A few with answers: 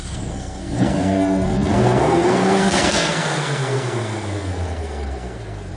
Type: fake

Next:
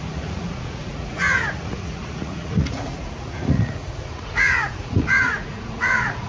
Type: fake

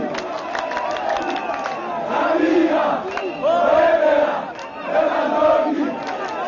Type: real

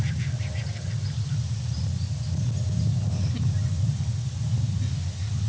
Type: real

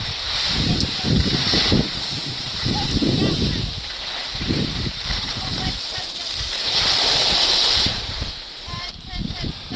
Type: fake